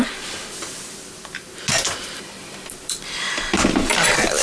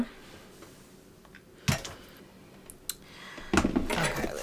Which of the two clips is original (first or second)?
second